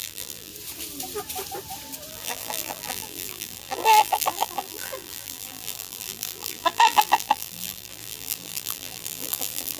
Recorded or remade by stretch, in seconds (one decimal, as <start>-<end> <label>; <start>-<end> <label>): 0.0-0.5 remade; 0.5-2.1 recorded; 2.1-9.8 remade

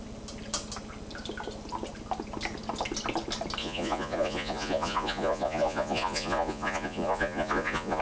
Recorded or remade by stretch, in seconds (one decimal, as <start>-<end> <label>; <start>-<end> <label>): 0.0-3.6 recorded; 3.6-8.0 remade

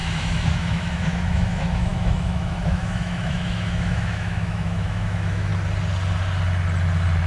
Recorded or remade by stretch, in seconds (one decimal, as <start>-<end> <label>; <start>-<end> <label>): 0.0-5.5 remade; 5.5-7.3 recorded

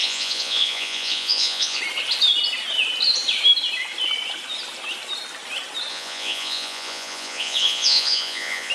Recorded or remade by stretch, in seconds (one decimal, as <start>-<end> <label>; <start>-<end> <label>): 0.0-1.8 remade; 1.8-5.9 recorded; 5.9-8.7 remade

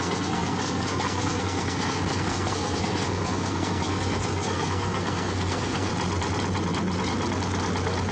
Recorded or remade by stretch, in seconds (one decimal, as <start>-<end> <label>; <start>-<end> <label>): 0.0-5.9 remade; 5.9-8.1 recorded

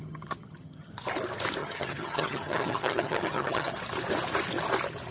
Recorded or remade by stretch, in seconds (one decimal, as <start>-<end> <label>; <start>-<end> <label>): 0.0-0.9 remade; 0.9-1.6 recorded; 1.6-3.8 remade; 3.8-5.1 recorded

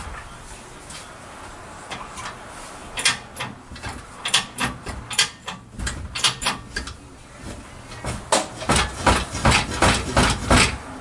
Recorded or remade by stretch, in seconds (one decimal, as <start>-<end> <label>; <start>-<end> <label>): 0.0-11.0 recorded